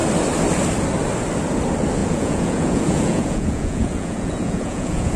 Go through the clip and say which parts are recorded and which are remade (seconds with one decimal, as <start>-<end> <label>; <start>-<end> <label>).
0.0-2.0 recorded; 2.0-5.2 remade